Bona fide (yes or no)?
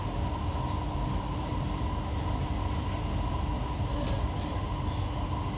yes